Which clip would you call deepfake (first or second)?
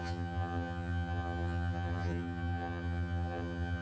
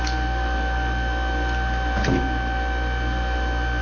first